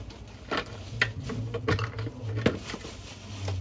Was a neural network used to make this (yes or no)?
no